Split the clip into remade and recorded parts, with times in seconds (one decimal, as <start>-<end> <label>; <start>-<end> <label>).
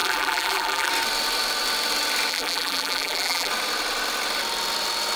0.0-0.9 remade; 0.9-2.3 recorded; 2.3-3.5 remade; 3.5-5.2 recorded